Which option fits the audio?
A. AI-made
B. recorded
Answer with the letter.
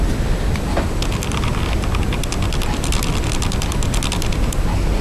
B